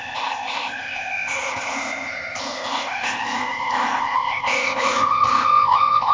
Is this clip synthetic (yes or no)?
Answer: yes